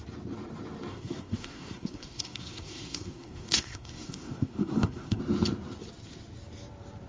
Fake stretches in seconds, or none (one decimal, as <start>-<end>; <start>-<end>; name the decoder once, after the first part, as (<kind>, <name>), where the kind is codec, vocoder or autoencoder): 0.9-5.2 (codec, SNAC)